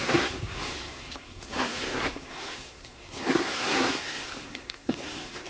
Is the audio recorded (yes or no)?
no